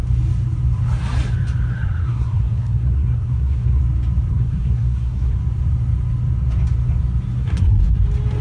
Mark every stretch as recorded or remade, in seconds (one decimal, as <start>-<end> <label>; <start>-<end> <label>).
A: 0.0-1.7 recorded; 1.7-3.8 remade; 3.8-4.3 recorded; 4.3-5.4 remade; 5.4-7.4 recorded; 7.4-7.9 remade; 7.9-8.4 recorded